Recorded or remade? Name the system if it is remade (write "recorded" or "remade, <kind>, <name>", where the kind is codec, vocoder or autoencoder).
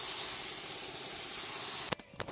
recorded